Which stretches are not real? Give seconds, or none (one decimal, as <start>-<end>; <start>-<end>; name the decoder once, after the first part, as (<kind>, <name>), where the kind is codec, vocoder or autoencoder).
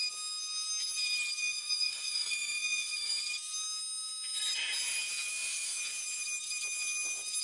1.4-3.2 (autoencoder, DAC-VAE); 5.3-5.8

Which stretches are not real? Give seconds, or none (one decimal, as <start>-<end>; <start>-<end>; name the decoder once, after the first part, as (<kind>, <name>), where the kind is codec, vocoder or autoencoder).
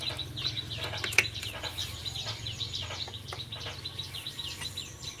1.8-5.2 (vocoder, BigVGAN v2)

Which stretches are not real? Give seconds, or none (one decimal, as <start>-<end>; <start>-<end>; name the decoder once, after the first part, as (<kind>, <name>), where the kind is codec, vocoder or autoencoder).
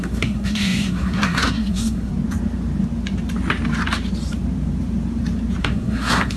0.0-2.1 (codec, SNAC); 5.6-6.4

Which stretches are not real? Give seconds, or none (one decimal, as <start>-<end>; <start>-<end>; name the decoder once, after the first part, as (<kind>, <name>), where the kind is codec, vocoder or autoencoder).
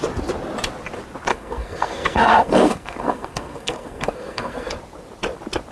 1.3-4.7 (codec, SNAC)